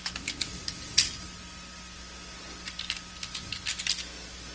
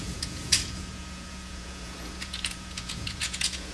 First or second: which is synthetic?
second